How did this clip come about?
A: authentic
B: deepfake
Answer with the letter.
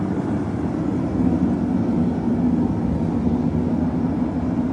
A